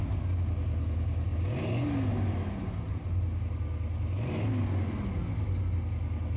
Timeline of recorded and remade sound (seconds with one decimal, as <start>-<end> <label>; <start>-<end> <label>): 0.0-6.4 recorded

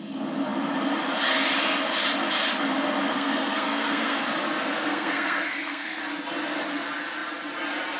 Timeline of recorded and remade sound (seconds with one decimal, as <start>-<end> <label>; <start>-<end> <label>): 0.0-3.1 recorded; 3.1-4.2 remade; 4.2-4.7 recorded; 4.7-6.0 remade; 6.0-8.0 recorded

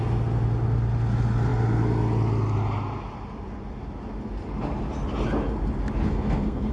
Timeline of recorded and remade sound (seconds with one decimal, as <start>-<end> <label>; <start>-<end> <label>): 0.0-6.1 recorded; 6.1-6.7 remade

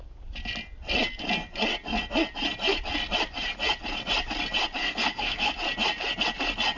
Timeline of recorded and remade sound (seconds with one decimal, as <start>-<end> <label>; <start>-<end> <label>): 0.0-4.8 recorded; 4.8-5.5 remade; 5.5-6.8 recorded

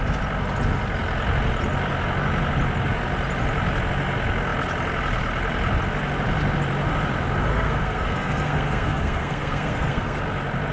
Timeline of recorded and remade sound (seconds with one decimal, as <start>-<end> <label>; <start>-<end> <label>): 0.0-7.5 recorded; 7.5-10.2 remade; 10.2-10.7 recorded

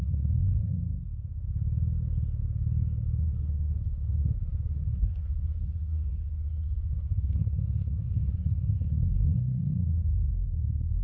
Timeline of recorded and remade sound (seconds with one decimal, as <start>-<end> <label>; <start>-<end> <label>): 0.0-0.8 remade; 0.8-3.2 recorded; 3.2-11.0 remade

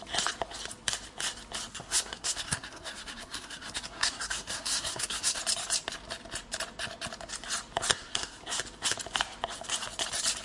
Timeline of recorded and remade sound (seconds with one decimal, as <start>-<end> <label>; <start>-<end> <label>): 0.0-1.7 recorded; 1.7-5.4 remade; 5.4-7.9 recorded; 7.9-8.4 remade; 8.4-10.4 recorded

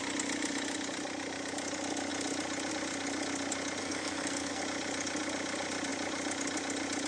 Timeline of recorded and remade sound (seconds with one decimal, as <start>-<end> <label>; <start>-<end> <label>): 0.0-3.8 recorded; 3.8-4.6 remade; 4.6-7.1 recorded